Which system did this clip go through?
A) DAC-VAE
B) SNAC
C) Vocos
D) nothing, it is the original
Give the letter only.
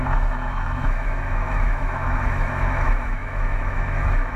A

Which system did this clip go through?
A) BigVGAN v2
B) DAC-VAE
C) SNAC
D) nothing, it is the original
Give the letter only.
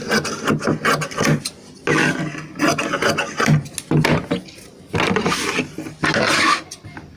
D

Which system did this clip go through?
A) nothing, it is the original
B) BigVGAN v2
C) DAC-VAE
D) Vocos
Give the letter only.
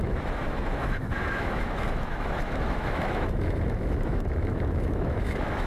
C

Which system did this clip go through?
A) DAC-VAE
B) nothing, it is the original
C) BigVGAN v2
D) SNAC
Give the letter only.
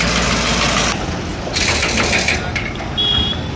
B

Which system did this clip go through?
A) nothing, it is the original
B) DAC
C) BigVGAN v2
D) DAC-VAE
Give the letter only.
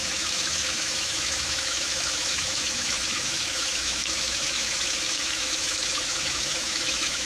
D